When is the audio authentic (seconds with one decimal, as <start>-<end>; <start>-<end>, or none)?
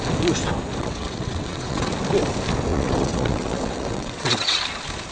0.0-0.8; 1.9-2.7; 4.6-5.1